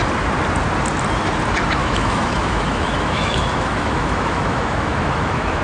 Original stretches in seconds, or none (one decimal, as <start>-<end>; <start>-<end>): 0.0-1.8